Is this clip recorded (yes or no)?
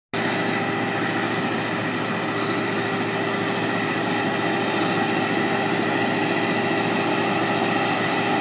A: yes